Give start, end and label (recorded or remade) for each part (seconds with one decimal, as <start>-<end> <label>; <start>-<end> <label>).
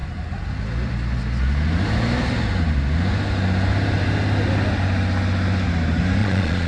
0.0-6.2 recorded; 6.2-6.7 remade